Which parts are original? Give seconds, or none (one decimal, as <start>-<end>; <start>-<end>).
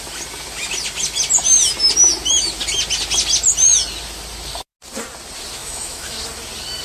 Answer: 0.0-5.6; 6.2-6.8